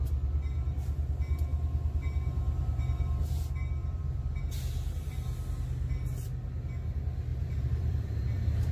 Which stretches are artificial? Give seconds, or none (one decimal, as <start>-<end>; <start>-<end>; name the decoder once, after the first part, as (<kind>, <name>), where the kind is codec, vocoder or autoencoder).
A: 3.8-4.4 (vocoder, BigVGAN v2); 7.3-8.7

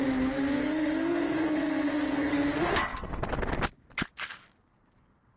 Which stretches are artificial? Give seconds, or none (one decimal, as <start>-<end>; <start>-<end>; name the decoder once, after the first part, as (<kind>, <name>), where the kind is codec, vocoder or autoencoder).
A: 0.6-2.3 (codec, SNAC)

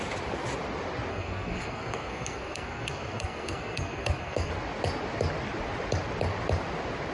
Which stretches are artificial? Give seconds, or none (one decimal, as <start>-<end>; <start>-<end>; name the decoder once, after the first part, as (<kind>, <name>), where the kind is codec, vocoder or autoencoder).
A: 1.1-4.5 (codec, SNAC)

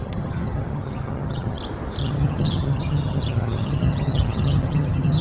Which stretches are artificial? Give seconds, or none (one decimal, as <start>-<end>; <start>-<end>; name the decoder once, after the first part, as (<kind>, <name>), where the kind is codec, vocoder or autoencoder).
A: 0.0-1.6 (vocoder, HiFi-GAN); 2.0-5.2

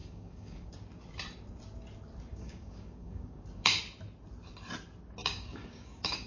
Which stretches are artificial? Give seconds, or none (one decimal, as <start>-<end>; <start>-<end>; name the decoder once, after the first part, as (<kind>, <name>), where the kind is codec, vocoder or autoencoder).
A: 0.0-0.7 (codec, DAC); 2.3-3.8; 5.2-6.3

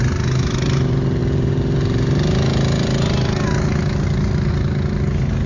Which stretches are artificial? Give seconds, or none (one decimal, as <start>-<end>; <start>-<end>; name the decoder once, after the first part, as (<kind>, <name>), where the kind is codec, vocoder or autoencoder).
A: none

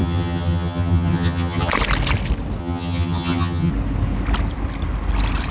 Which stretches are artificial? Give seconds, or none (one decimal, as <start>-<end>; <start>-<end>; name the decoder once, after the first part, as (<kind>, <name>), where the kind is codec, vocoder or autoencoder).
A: 0.0-1.7 (vocoder, HiFi-GAN); 2.6-3.7